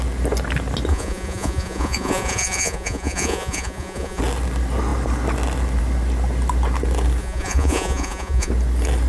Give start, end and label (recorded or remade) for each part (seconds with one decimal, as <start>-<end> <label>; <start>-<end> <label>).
0.0-0.9 recorded; 0.9-4.2 remade; 4.2-7.2 recorded; 7.2-8.5 remade; 8.5-9.1 recorded